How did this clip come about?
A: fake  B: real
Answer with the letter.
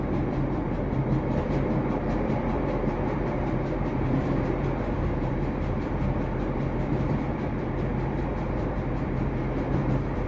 A